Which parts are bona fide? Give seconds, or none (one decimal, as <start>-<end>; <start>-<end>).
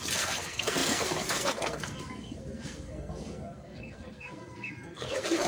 none